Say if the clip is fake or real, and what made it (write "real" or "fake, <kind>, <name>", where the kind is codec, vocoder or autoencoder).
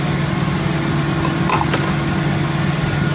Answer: real